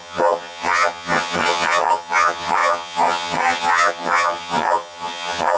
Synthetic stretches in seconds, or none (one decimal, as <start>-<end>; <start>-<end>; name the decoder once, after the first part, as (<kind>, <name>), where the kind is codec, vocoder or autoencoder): 0.0-5.6 (vocoder, HiFi-GAN)